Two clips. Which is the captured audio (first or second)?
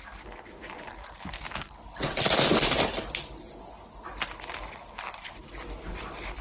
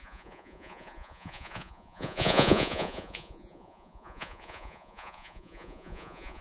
first